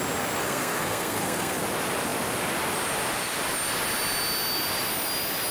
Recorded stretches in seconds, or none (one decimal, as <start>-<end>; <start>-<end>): 0.0-0.4; 1.6-5.5